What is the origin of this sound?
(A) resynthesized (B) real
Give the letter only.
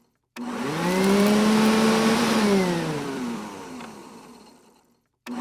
A